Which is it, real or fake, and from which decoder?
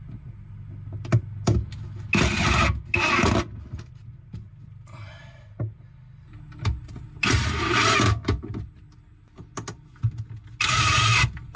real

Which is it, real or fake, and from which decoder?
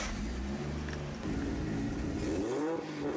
real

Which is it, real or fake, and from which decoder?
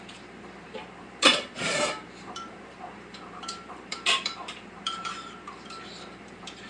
fake, vocoder, BigVGAN v2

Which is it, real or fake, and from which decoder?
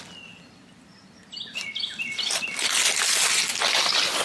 real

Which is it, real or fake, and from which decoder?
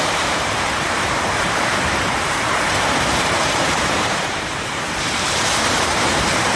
fake, vocoder, BigVGAN v2